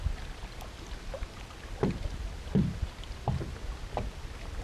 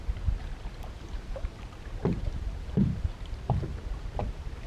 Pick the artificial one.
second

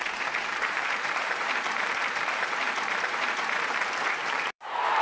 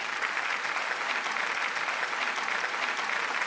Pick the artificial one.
first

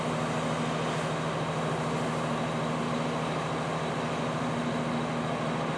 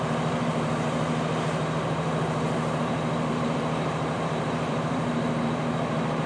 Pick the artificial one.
second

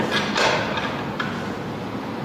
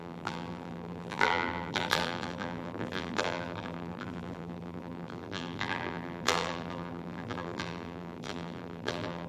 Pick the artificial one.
second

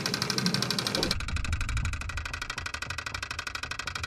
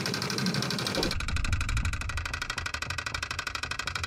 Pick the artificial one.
second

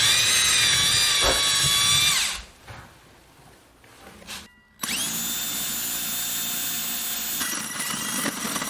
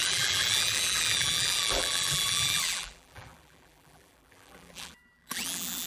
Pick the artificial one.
second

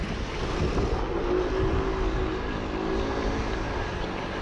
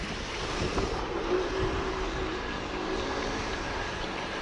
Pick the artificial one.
second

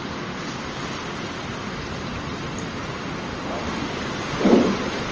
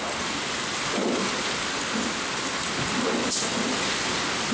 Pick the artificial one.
first